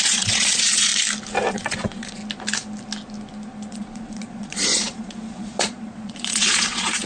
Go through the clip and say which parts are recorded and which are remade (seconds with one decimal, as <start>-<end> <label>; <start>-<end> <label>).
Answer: 0.0-0.9 remade; 0.9-1.5 recorded; 1.5-2.2 remade; 2.2-3.7 recorded; 3.7-7.1 remade